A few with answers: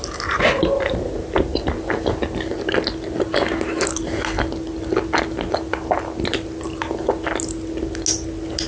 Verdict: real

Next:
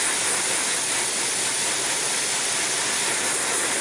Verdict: real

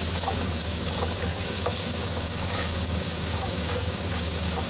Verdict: fake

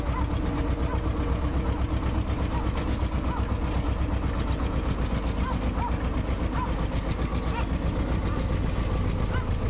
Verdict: real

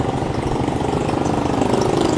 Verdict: fake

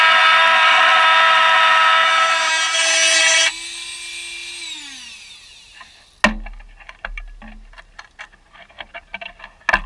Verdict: real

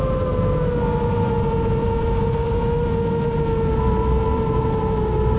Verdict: real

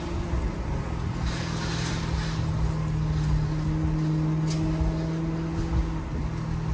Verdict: real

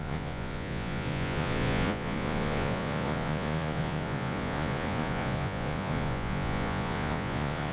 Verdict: fake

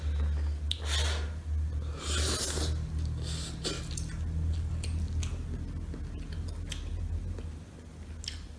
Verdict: real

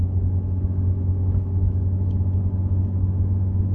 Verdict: fake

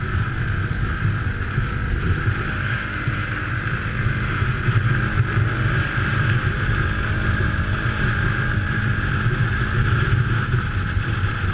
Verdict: real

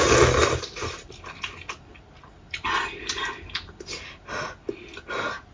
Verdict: real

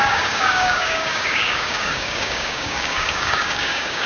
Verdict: fake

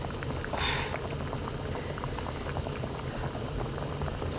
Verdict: real